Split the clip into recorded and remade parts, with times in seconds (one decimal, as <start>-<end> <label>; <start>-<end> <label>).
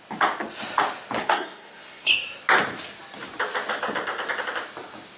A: 0.0-1.2 recorded; 1.2-2.1 remade; 2.1-5.2 recorded